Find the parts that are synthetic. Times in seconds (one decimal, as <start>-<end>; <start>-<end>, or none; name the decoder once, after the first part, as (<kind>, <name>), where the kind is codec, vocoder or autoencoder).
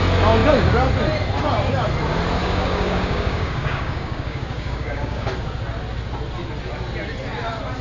2.4-5.3 (codec, DAC)